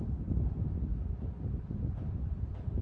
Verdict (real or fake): fake